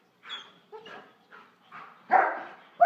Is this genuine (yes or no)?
yes